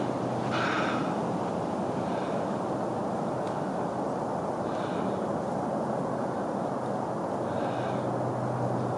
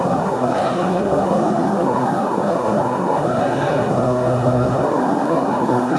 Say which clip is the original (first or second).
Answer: first